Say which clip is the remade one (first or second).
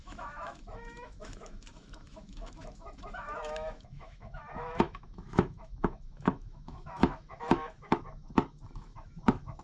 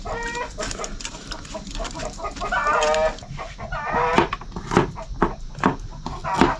first